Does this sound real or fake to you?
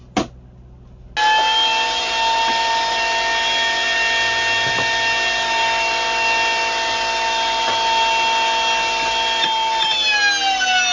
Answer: real